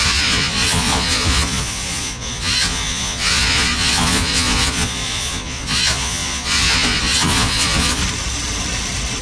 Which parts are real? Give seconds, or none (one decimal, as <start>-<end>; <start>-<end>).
8.0-9.2